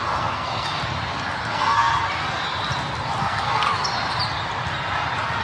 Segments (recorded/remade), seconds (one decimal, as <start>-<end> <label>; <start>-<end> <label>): 0.0-0.8 remade; 0.8-1.4 recorded; 1.4-1.9 remade; 1.9-3.2 recorded; 3.2-3.7 remade; 3.7-5.4 recorded